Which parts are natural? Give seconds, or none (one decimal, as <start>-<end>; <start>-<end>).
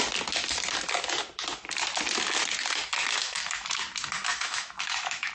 0.0-3.2; 3.8-4.3